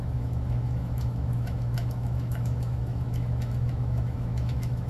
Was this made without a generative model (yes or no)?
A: no